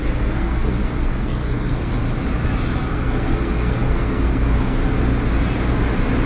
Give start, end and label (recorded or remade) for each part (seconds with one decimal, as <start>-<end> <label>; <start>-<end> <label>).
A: 0.0-2.0 remade; 2.0-2.9 recorded; 2.9-4.8 remade; 4.8-6.3 recorded